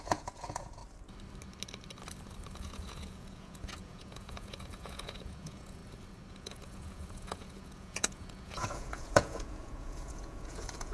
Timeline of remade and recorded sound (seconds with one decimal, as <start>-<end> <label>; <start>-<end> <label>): 0.0-0.8 remade; 0.8-2.5 recorded; 2.5-5.8 remade; 5.8-6.3 recorded; 6.3-10.9 remade